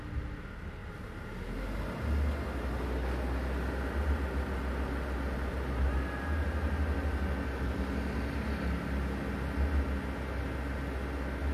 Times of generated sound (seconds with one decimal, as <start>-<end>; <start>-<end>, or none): none